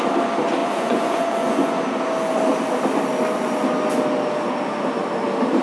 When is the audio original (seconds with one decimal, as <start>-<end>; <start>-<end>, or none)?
0.0-0.6; 1.8-5.6